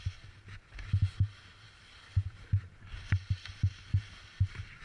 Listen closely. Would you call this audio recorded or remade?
recorded